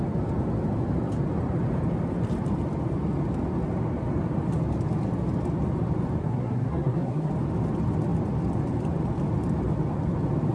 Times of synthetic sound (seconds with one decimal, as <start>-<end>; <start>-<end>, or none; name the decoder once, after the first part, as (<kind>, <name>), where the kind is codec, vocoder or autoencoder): 6.2-7.3 (codec, SNAC)